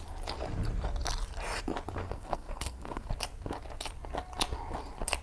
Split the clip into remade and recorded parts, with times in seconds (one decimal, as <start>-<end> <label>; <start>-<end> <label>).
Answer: 0.0-2.0 recorded; 2.0-3.1 remade; 3.1-5.2 recorded